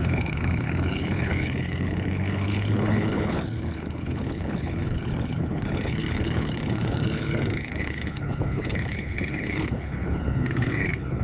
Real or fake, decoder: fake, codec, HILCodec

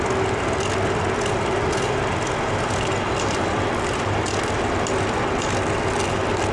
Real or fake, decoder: real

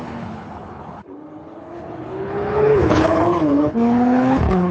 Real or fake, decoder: fake, codec, HILCodec